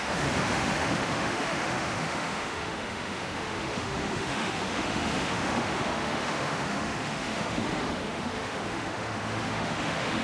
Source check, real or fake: fake